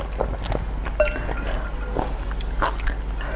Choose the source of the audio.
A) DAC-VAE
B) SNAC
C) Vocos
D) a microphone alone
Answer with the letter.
D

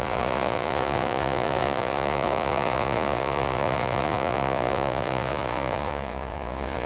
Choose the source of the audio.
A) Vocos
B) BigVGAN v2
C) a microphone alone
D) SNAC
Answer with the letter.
A